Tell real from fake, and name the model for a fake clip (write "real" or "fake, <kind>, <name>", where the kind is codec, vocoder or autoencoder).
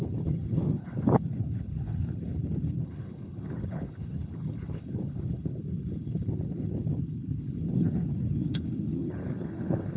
fake, codec, HILCodec